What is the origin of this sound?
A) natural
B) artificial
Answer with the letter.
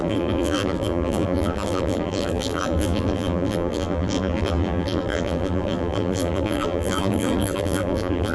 B